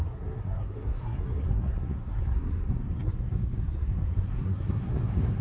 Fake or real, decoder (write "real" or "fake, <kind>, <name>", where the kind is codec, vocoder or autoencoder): fake, codec, SNAC